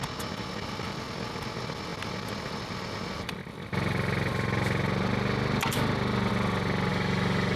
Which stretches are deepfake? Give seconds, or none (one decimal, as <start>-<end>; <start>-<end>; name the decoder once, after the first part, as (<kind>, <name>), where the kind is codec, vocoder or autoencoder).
6.9-7.6 (autoencoder, DAC-VAE)